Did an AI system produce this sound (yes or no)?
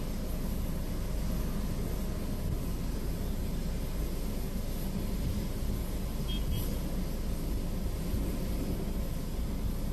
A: no